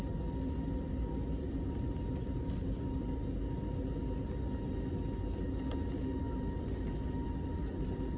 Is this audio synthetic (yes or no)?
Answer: no